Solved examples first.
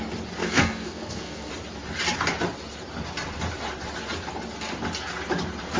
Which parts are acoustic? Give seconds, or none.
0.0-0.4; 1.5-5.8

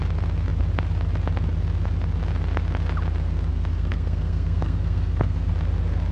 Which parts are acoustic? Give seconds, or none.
0.0-3.5; 5.5-6.1

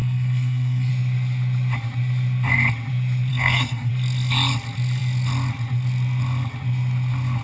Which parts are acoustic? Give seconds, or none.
0.9-3.3; 3.9-7.4

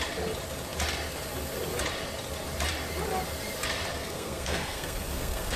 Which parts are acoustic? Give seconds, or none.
0.0-3.9

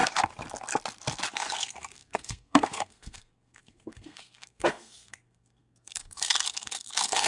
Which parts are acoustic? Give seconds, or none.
0.0-1.3

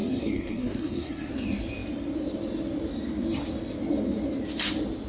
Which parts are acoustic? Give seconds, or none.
1.3-5.1

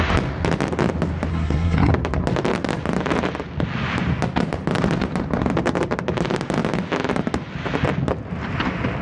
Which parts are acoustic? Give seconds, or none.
0.0-1.3; 1.9-9.0